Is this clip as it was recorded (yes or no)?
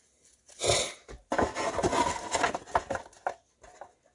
yes